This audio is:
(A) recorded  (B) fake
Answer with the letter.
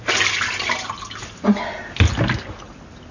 A